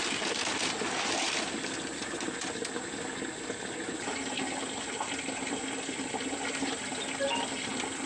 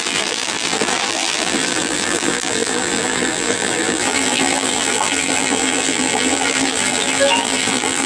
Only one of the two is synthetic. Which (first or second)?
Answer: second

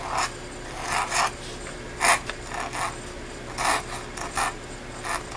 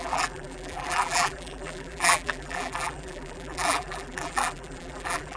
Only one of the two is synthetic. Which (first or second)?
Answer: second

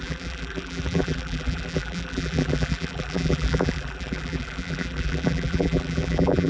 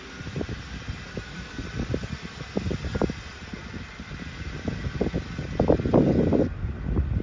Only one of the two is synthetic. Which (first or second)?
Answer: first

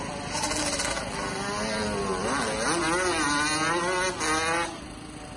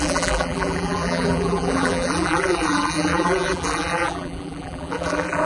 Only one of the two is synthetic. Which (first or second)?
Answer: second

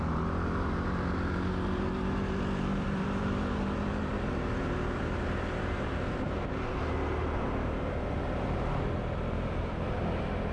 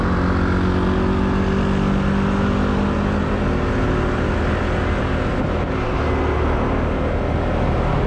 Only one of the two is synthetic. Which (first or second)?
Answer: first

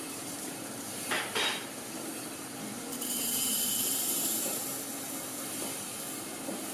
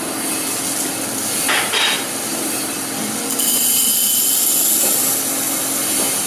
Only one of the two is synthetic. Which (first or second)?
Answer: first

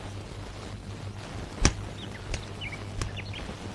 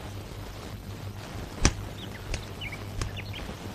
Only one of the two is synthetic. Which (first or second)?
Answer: second